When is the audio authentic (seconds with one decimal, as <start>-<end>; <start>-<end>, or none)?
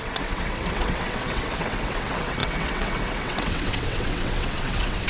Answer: none